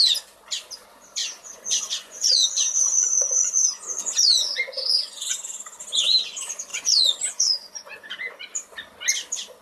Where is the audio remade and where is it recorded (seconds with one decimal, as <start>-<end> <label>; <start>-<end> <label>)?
0.0-1.2 recorded; 1.2-5.3 remade; 5.3-6.7 recorded; 6.7-8.3 remade; 8.3-9.6 recorded